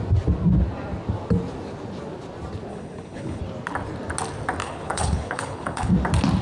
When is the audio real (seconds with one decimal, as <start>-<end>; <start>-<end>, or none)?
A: 0.0-2.7; 3.4-4.6; 5.9-6.4

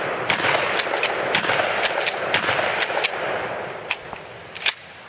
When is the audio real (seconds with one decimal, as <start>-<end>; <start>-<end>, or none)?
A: 0.0-5.1

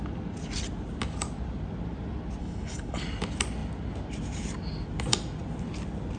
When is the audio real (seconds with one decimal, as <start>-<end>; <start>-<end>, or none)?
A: 0.0-2.4; 3.0-6.2

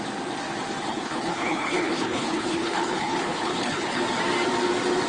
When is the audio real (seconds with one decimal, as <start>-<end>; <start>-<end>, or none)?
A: 0.0-0.9; 4.0-5.1

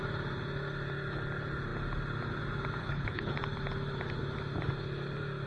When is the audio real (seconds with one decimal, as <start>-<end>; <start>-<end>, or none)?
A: 0.0-2.8; 3.3-5.5

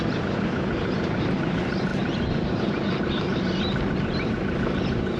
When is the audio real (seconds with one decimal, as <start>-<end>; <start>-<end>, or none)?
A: 0.0-5.2

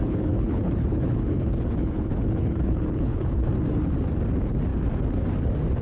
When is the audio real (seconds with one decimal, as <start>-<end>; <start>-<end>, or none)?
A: 3.5-5.8